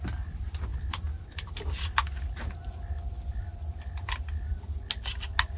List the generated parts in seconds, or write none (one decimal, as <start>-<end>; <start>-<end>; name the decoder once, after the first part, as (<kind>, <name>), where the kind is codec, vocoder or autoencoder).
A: none